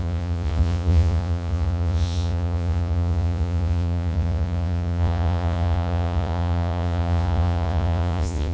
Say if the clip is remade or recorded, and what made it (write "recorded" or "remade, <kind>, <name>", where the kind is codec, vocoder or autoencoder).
remade, vocoder, Vocos